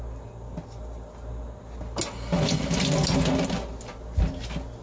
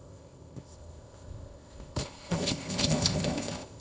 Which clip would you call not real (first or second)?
second